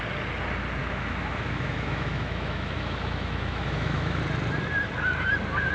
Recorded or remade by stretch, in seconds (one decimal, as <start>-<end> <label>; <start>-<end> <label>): 0.0-0.8 recorded; 0.8-4.2 remade; 4.2-5.7 recorded